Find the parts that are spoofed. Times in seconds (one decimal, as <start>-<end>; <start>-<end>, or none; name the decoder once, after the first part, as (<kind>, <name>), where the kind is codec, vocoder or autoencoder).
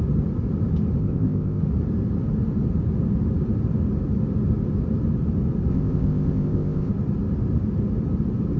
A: 1.0-1.6 (codec, ZipCodec); 5.7-6.9